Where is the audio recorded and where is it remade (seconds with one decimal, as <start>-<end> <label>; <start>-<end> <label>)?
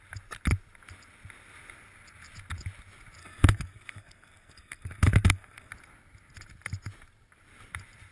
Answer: 0.0-3.2 recorded; 3.2-5.7 remade; 5.7-8.1 recorded